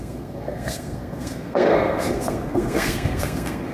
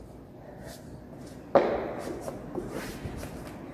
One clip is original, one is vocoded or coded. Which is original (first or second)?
second